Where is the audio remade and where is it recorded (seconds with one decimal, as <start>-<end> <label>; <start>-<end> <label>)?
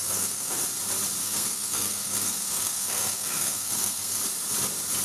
0.0-0.6 remade; 0.6-1.2 recorded; 1.2-4.2 remade; 4.2-5.0 recorded